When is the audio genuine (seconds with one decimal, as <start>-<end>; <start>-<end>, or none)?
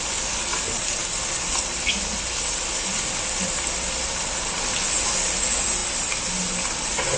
0.0-7.2